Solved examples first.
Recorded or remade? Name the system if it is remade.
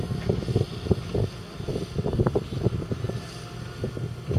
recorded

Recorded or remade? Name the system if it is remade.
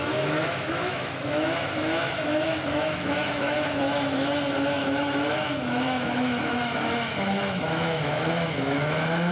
remade, autoencoder, DAC-VAE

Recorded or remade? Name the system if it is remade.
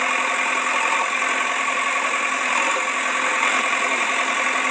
recorded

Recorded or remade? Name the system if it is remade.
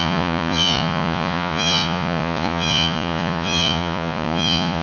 remade, vocoder, Vocos